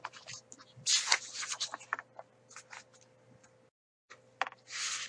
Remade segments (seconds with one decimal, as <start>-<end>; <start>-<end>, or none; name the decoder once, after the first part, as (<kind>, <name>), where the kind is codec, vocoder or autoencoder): none